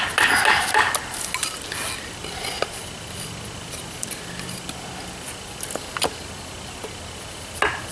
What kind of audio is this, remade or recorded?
recorded